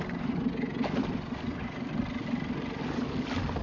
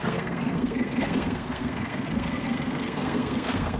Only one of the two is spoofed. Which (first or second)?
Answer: second